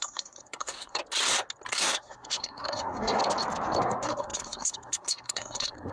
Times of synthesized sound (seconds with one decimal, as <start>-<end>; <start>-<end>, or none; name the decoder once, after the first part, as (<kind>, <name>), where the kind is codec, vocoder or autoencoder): 0.0-1.0 (codec, SNAC); 1.7-3.2; 3.8-5.9